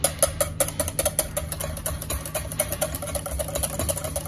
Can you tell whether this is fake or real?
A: real